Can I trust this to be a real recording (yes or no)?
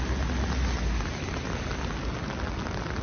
yes